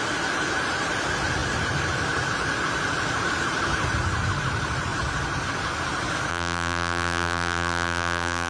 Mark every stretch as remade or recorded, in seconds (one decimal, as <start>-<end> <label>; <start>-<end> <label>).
0.0-6.3 recorded; 6.3-8.5 remade